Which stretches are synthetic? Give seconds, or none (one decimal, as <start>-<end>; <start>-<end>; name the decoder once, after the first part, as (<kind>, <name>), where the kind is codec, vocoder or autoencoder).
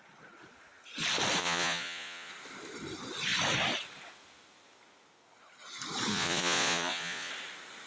1.4-2.3 (vocoder, Vocos); 6.1-7.3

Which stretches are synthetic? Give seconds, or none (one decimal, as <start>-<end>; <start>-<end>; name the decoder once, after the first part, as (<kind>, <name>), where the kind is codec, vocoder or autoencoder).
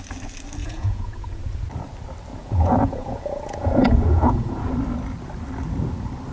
0.6-1.4 (vocoder, Vocos); 2.3-4.7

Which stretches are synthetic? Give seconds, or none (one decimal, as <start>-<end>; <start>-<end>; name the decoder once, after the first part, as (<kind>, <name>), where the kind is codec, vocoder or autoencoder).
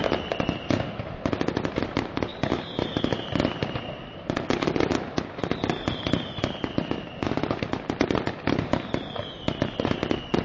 none